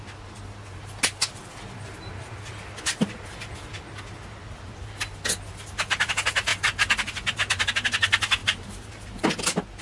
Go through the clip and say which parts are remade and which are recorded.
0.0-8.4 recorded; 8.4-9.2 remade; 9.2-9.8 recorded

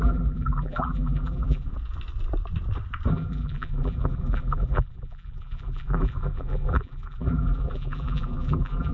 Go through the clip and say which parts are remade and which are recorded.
0.0-1.7 remade; 1.7-3.1 recorded; 3.1-8.9 remade

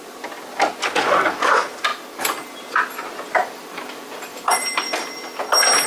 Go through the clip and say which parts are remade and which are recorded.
0.0-1.9 recorded; 1.9-2.5 remade; 2.5-3.4 recorded; 3.4-5.9 remade

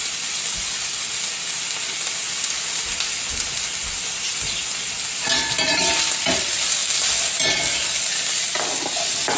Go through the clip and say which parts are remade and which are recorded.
0.0-9.4 recorded

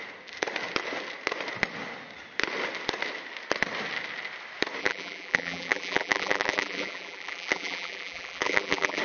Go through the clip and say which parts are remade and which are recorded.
0.0-4.8 recorded; 4.8-9.0 remade

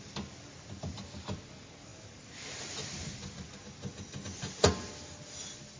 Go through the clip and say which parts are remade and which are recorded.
0.0-5.8 recorded

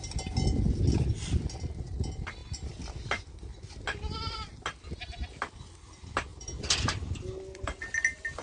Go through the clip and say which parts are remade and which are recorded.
0.0-6.3 recorded; 6.3-7.6 remade; 7.6-8.4 recorded

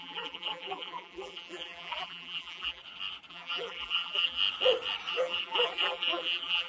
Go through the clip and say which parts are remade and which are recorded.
0.0-2.8 remade; 2.8-3.3 recorded; 3.3-4.4 remade; 4.4-5.1 recorded; 5.1-6.7 remade